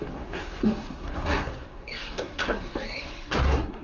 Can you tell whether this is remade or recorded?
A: remade